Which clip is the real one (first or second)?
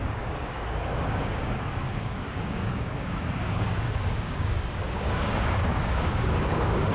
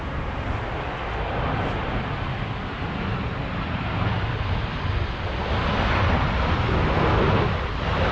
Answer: second